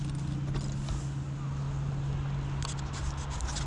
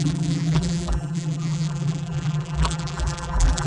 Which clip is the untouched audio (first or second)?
first